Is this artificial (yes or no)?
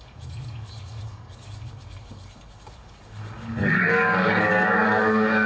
yes